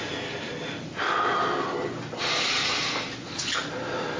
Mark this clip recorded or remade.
recorded